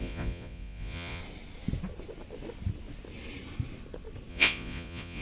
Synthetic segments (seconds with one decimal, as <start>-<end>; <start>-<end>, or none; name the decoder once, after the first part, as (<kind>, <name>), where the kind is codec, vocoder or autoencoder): 0.0-1.2 (vocoder, Vocos); 4.3-5.2